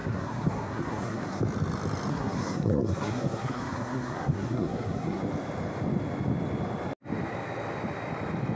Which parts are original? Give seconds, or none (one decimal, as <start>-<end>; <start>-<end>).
1.4-2.1; 5.2-8.6